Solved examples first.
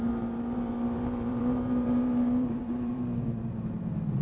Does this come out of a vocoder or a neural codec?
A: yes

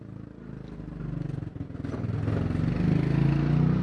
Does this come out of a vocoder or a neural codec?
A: no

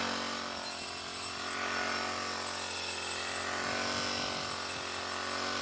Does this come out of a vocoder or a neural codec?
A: no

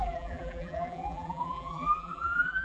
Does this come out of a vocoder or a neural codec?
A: yes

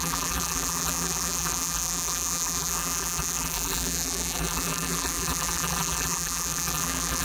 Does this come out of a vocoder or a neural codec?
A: yes